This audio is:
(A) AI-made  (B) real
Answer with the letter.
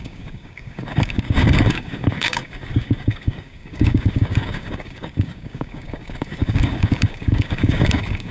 A